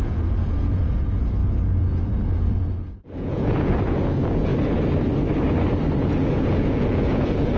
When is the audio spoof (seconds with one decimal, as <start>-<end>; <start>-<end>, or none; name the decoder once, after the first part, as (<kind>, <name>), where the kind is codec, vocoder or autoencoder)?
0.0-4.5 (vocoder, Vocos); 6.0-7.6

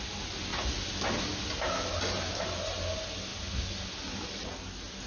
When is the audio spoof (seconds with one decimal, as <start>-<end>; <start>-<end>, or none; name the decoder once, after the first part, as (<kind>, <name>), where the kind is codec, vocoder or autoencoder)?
none

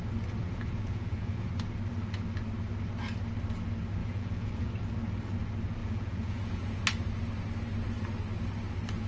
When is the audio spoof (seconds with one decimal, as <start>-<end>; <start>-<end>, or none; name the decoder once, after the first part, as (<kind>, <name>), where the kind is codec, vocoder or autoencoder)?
0.4-1.5 (vocoder, Vocos); 4.0-4.7; 5.8-6.8

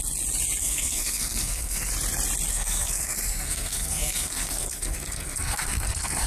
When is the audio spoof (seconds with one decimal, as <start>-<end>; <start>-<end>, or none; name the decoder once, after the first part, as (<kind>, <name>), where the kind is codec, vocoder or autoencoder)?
0.6-1.9 (codec, SNAC); 2.5-6.3

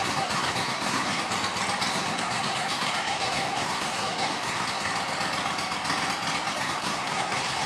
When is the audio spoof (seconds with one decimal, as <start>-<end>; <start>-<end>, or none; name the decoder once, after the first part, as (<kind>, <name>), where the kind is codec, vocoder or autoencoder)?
0.0-1.2 (codec, SNAC); 1.9-4.9; 6.5-7.7